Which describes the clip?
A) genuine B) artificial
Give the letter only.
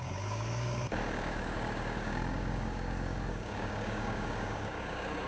B